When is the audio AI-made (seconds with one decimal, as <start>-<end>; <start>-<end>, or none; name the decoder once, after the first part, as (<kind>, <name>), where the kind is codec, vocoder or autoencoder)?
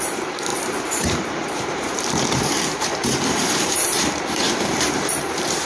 0.0-5.7 (vocoder, BigVGAN v2)